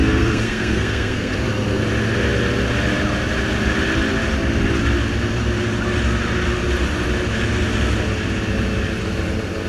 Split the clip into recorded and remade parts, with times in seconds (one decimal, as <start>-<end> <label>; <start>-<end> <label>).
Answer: 0.0-1.3 remade; 1.3-9.7 recorded